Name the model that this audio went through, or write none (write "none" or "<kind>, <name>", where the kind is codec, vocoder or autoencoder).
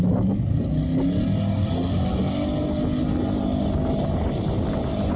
none